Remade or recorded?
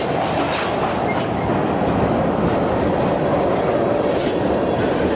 recorded